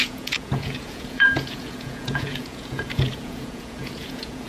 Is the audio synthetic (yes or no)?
yes